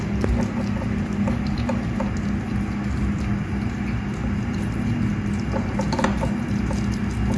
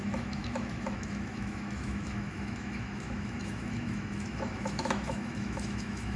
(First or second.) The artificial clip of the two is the second